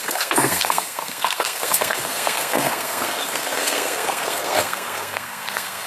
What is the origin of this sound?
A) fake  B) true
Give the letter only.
A